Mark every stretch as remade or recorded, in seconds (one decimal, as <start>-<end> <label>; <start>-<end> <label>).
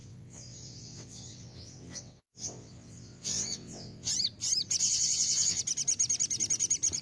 0.0-4.1 remade; 4.1-4.8 recorded; 4.8-5.6 remade; 5.6-7.0 recorded